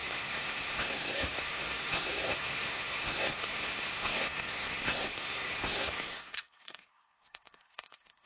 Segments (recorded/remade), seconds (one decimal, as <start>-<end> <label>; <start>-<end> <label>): 0.0-8.3 remade

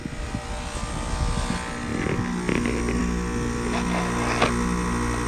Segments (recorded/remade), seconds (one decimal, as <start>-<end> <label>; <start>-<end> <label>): 0.0-5.3 recorded

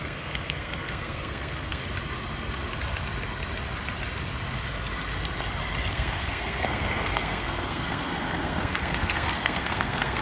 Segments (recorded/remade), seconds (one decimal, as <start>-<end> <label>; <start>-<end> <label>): 0.0-1.8 remade; 1.8-5.9 recorded; 5.9-10.2 remade

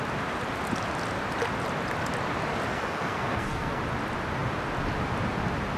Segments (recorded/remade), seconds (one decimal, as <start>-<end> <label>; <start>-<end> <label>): 0.0-2.7 recorded; 2.7-3.8 remade; 3.8-5.8 recorded

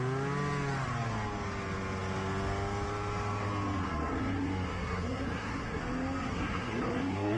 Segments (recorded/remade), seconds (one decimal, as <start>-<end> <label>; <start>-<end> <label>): 0.0-3.8 recorded; 3.8-5.8 remade; 5.8-6.3 recorded; 6.3-7.4 remade